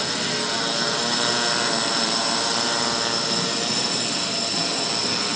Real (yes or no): yes